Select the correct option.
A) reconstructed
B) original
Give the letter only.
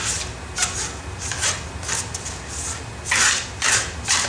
B